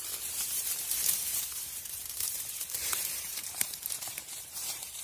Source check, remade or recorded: remade